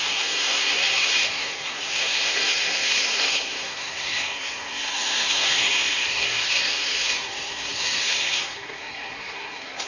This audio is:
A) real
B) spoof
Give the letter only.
B